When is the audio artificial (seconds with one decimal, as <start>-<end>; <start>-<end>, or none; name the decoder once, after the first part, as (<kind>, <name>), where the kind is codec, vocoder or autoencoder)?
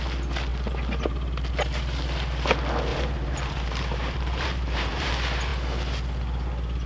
2.9-5.1 (vocoder, BigVGAN v2)